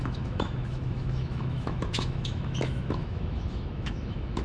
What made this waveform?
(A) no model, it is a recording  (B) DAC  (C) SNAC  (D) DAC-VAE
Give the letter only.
D